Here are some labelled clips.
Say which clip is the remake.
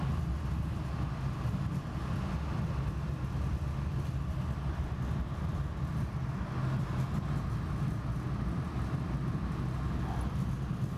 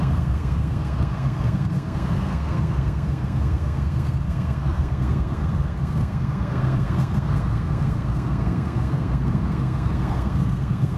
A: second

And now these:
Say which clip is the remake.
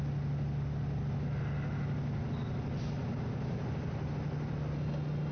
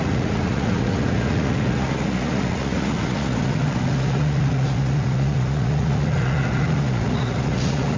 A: second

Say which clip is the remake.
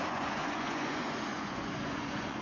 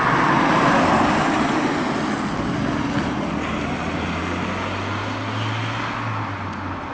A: first